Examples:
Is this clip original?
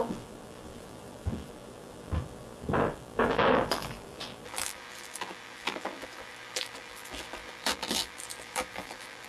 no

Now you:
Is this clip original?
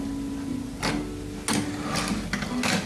yes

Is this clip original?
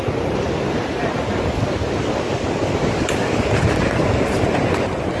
yes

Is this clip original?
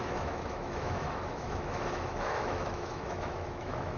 no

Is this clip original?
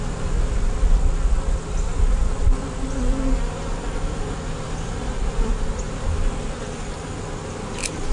yes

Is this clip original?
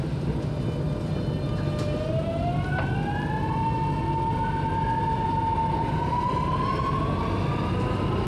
yes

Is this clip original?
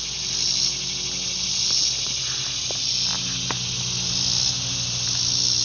yes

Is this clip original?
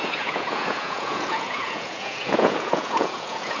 no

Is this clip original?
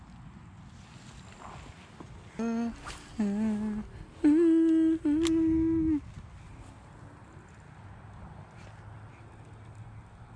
yes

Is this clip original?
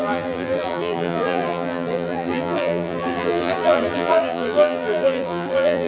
no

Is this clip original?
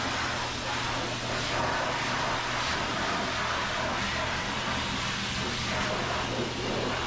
yes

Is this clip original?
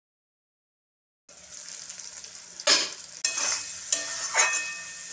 yes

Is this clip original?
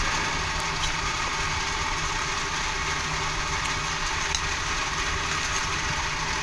yes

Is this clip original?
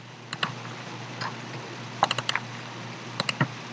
yes